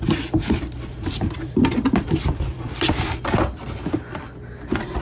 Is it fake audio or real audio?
fake